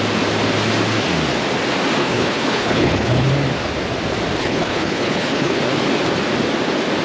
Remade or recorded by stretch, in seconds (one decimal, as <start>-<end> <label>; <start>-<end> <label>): 0.0-2.0 recorded; 2.0-3.3 remade; 3.3-4.4 recorded; 4.4-5.6 remade; 5.6-7.0 recorded